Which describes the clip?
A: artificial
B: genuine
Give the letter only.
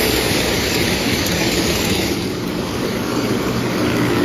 A